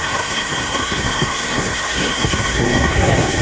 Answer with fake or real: fake